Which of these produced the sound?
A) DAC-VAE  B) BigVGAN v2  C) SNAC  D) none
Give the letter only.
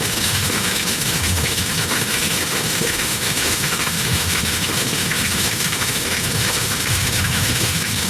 A